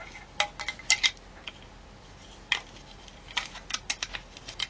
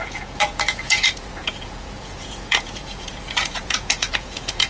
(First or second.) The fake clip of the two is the second